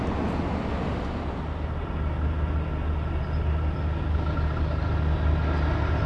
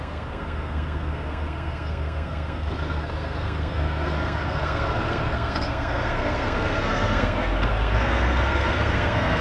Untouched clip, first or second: first